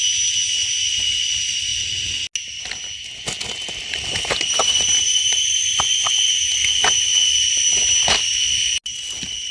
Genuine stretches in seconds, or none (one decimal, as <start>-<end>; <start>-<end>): 0.0-9.5